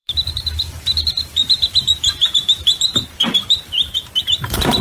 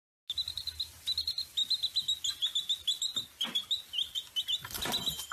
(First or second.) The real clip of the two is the second